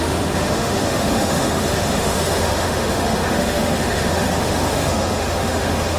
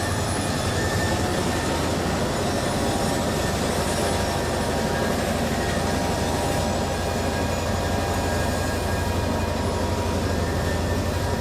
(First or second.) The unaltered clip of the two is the second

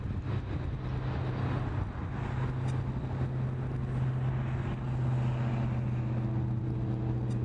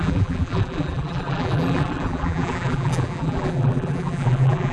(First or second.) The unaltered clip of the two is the first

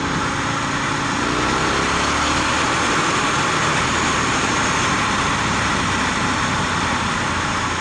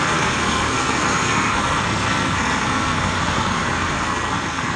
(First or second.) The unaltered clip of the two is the first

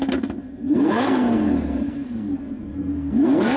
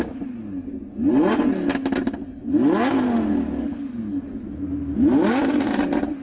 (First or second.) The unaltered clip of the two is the second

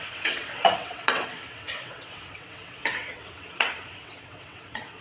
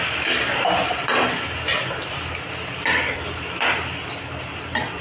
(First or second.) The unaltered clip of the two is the second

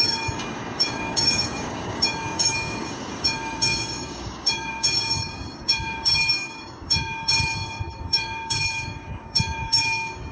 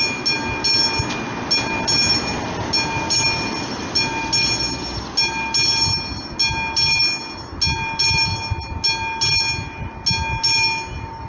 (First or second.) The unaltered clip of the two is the second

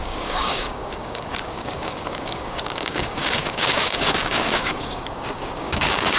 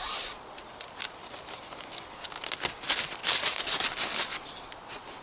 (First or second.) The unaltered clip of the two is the second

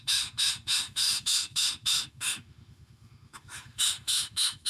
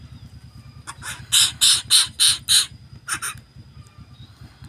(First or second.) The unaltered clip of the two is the second